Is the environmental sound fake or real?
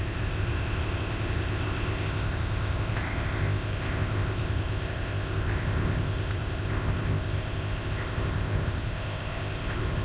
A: fake